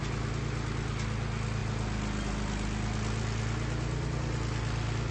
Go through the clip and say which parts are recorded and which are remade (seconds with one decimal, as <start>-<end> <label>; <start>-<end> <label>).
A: 0.0-5.1 recorded